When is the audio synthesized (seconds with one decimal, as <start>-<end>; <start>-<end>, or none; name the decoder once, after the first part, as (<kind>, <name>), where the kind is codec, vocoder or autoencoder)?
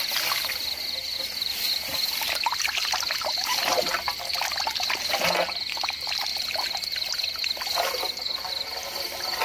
none